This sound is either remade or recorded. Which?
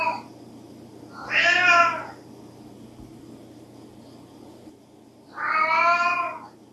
recorded